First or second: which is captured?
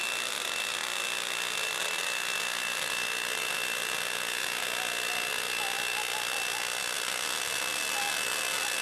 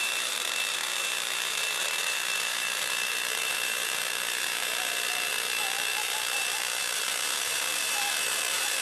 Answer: first